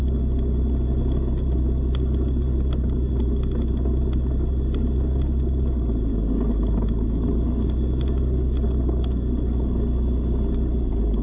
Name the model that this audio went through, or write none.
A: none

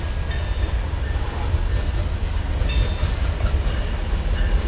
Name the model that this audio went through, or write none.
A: none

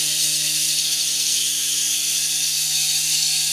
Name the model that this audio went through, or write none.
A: codec, SNAC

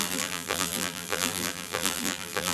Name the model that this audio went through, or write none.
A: vocoder, BigVGAN v2